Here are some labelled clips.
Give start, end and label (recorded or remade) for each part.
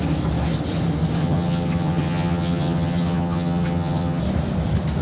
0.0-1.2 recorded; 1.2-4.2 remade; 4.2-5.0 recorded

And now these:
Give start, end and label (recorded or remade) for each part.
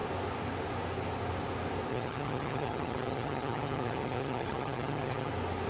0.0-1.9 recorded; 1.9-5.3 remade; 5.3-5.7 recorded